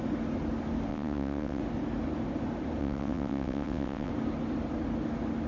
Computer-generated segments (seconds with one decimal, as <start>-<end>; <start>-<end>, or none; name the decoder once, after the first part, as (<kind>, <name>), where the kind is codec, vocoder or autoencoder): 0.9-1.6 (vocoder, WaveNeXt); 2.8-4.1